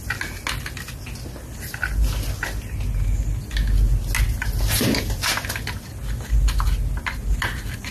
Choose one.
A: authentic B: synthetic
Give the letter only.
A